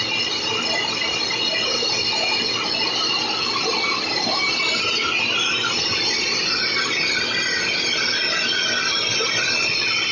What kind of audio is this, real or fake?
real